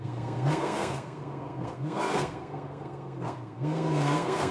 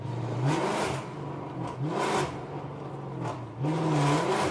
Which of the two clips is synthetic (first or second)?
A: first